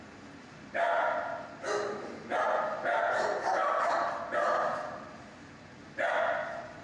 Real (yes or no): yes